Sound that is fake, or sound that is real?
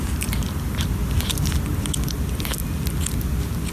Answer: real